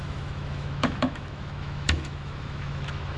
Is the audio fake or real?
fake